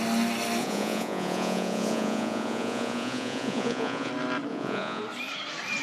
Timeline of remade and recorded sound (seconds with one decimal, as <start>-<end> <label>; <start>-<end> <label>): 0.0-0.6 recorded; 0.6-4.1 remade; 4.1-4.5 recorded; 4.5-5.0 remade; 5.0-5.8 recorded